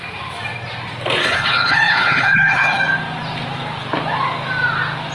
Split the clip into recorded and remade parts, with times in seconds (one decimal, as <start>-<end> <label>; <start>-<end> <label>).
0.0-1.2 recorded; 1.2-2.8 remade; 2.8-5.1 recorded